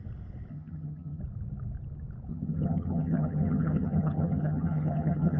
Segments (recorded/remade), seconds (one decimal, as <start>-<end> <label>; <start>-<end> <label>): 0.0-0.5 recorded; 0.5-1.2 remade; 1.2-2.3 recorded; 2.3-5.4 remade